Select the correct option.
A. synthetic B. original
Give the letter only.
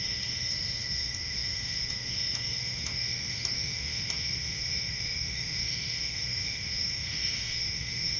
A